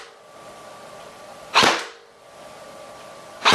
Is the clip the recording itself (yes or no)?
no